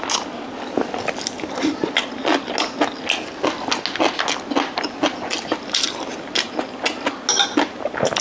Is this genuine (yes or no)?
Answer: yes